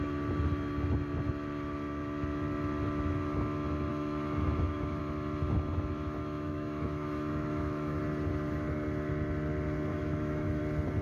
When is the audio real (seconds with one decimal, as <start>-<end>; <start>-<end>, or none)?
0.0-3.9; 5.0-6.2; 8.0-9.9; 10.6-11.0